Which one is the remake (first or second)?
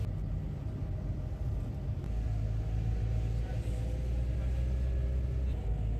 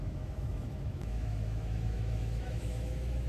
second